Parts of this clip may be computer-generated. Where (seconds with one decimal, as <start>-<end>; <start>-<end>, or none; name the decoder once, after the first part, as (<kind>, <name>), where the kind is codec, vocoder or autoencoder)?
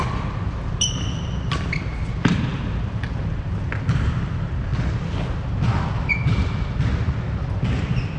none